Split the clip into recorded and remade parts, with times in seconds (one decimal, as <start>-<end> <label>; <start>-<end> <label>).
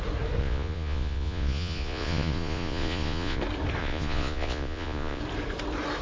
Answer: 0.0-0.4 recorded; 0.4-3.4 remade; 3.4-3.8 recorded; 3.8-5.2 remade; 5.2-6.0 recorded